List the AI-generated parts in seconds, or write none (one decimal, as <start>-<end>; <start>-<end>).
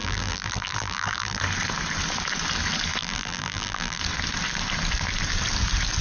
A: 0.0-1.4; 3.0-4.0